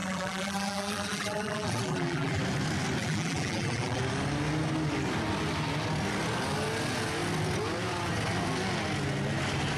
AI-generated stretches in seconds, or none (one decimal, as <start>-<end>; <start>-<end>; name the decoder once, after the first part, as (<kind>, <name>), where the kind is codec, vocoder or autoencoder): 0.0-2.4 (vocoder, BigVGAN v2); 3.0-4.0